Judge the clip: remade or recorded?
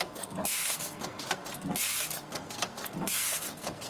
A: remade